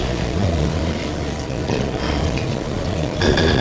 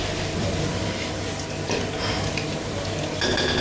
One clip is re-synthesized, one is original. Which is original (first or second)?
second